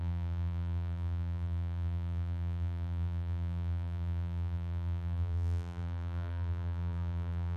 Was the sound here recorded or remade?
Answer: remade